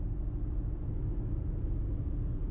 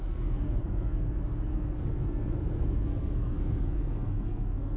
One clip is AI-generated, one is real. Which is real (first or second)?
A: first